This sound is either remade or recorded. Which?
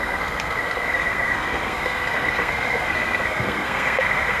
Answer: remade